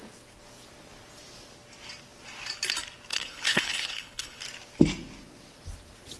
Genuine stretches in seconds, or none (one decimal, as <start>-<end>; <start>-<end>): 0.0-3.1; 4.4-6.2